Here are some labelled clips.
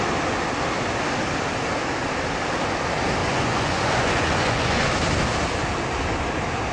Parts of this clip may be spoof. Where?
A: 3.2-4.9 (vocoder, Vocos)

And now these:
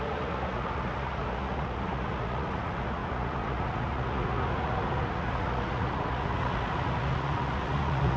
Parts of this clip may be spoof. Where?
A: 0.0-8.2 (vocoder, Vocos)

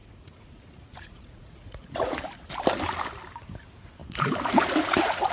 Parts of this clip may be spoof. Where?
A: 0.0-2.2 (vocoder, Vocos); 4.0-5.3

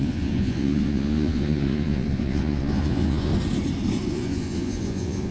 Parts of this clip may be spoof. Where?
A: 0.0-3.3 (vocoder, Vocos); 4.1-5.3

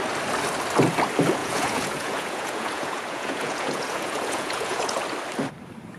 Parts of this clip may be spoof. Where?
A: 1.4-5.0 (vocoder, Vocos)

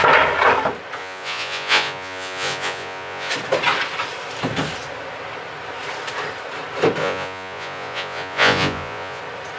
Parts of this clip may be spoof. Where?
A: 1.0-3.3 (vocoder, Vocos); 7.0-9.2